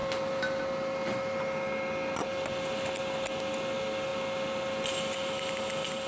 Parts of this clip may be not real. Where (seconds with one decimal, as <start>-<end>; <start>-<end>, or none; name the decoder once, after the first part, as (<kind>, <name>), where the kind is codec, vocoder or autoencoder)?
none